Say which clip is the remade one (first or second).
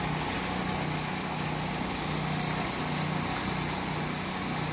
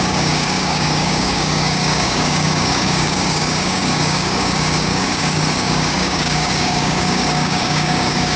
second